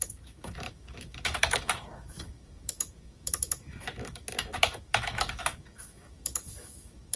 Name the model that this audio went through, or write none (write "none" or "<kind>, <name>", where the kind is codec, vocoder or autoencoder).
autoencoder, DAC-VAE